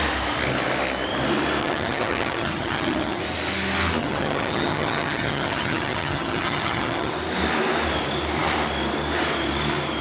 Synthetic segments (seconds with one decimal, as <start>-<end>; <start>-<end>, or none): 1.6-3.2; 4.0-7.1